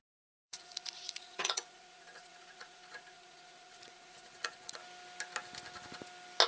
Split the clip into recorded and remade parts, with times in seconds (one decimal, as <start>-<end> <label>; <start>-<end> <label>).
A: 0.0-4.8 remade; 4.8-6.5 recorded